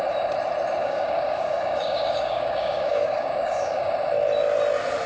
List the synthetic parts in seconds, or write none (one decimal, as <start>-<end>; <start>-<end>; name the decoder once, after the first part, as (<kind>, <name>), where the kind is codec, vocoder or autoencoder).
0.8-3.9 (codec, DAC)